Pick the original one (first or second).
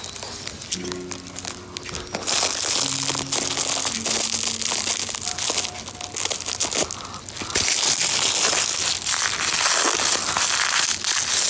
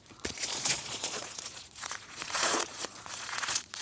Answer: first